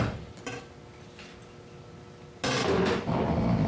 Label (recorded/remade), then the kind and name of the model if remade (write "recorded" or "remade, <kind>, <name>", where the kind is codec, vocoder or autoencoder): recorded